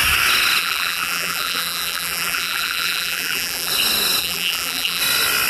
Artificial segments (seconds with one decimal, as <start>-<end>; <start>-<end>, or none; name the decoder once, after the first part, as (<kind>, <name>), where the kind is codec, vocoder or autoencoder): 0.6-3.7 (vocoder, BigVGAN v2); 4.2-5.0